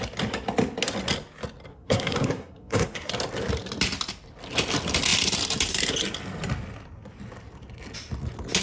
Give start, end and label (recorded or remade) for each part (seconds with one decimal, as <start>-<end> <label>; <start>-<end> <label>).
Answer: 0.0-1.7 recorded; 1.7-3.1 remade; 3.1-8.6 recorded